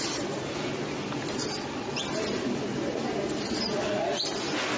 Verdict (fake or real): real